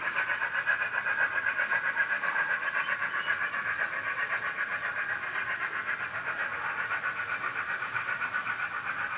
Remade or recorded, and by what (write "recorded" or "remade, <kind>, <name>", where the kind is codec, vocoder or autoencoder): recorded